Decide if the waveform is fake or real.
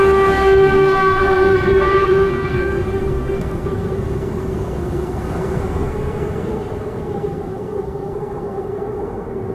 fake